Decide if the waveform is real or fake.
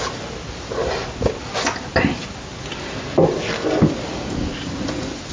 real